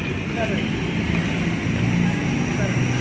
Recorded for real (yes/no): yes